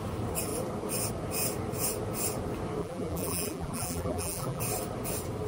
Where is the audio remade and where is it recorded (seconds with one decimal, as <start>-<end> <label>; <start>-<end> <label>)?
0.0-2.8 recorded; 2.8-4.6 remade; 4.6-5.5 recorded